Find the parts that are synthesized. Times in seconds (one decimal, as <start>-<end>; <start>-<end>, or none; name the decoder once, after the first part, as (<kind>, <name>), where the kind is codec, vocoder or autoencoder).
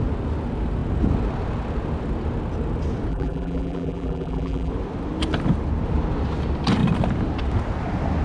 3.1-4.7 (vocoder, BigVGAN v2)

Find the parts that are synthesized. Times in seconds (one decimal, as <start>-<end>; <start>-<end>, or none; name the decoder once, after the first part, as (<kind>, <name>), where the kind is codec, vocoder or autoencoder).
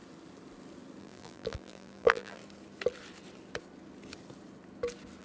1.0-2.4 (vocoder, BigVGAN v2)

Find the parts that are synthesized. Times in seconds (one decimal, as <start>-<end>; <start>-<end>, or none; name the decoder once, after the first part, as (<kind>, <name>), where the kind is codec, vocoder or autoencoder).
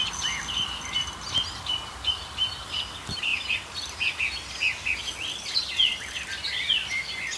none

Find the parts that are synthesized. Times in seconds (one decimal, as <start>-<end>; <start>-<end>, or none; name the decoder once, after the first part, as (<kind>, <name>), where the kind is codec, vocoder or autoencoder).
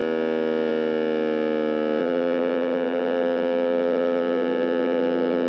2.0-5.5 (vocoder, BigVGAN v2)